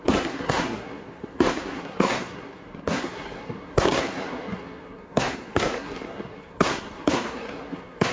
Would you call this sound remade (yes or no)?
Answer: yes